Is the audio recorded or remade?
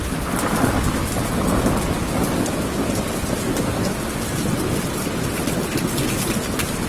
recorded